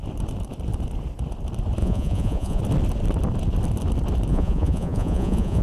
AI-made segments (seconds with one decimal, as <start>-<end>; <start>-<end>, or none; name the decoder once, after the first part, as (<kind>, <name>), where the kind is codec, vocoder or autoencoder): 1.8-2.6 (vocoder, Vocos); 4.3-5.6